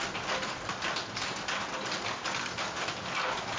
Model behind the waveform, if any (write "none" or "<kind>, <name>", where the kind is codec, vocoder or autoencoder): none